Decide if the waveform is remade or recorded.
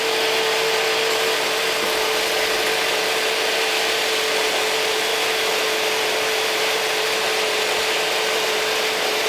recorded